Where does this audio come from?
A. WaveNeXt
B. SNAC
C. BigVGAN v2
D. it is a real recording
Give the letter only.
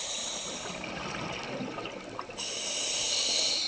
D